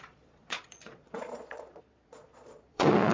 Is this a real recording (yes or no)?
no